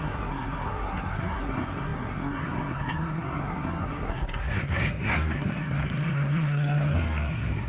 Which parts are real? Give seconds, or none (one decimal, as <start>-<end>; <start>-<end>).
none